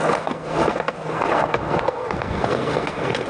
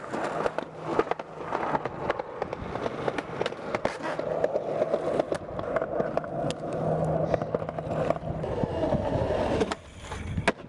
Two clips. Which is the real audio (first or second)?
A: second